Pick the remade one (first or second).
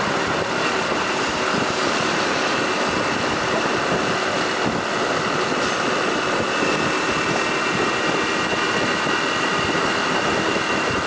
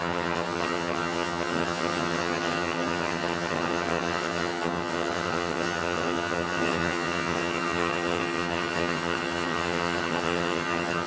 second